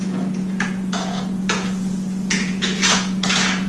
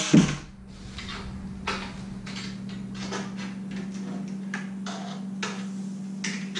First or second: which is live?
second